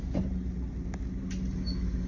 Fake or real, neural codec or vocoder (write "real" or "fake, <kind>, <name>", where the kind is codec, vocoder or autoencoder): real